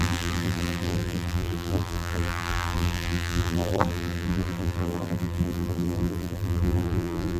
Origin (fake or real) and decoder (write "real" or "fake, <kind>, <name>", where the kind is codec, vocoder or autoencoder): fake, vocoder, BigVGAN v2